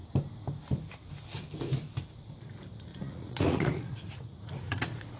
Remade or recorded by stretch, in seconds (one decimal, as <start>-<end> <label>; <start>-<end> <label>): 0.0-2.9 recorded; 2.9-5.2 remade